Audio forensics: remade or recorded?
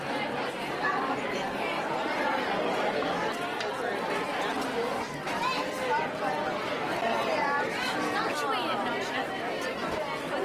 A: recorded